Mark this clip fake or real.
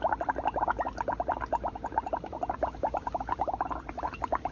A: real